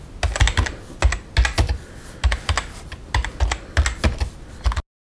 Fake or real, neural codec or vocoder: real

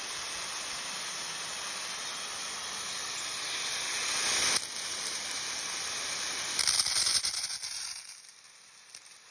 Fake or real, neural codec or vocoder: real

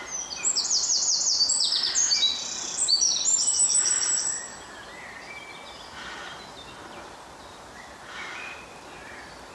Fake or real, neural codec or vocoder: real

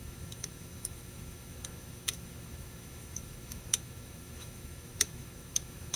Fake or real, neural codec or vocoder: fake, autoencoder, DAC-VAE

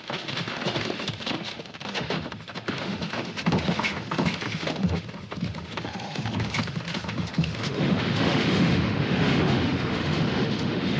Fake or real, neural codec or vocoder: fake, autoencoder, DAC-VAE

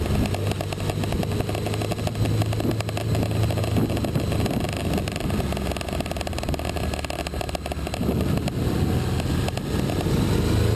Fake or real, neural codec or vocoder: real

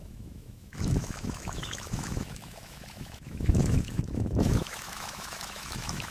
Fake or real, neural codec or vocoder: fake, autoencoder, DAC-VAE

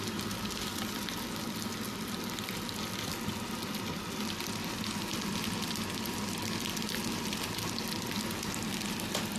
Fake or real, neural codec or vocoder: real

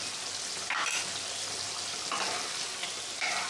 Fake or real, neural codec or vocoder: real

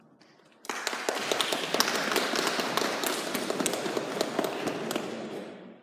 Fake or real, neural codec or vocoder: real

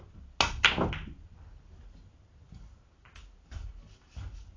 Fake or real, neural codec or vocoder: real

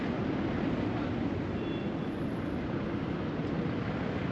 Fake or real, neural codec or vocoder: real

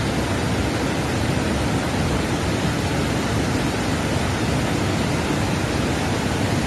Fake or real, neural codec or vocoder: real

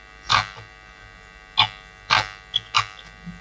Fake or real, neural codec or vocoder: real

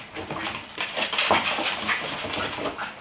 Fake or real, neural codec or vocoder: real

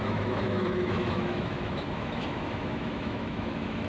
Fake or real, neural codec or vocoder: fake, autoencoder, DAC-VAE